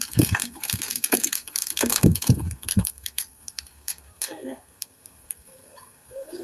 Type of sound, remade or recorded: remade